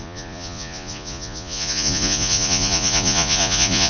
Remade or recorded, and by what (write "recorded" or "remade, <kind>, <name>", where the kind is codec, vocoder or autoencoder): remade, vocoder, Vocos